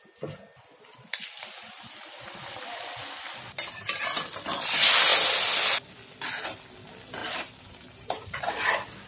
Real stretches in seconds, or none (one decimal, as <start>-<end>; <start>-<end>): 0.0-7.2; 8.4-9.1